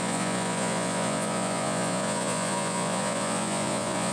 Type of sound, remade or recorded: remade